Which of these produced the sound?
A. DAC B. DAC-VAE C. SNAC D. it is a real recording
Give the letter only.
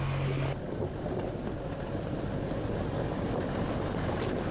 D